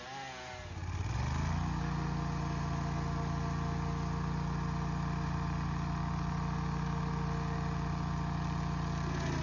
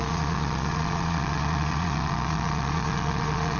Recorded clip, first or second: first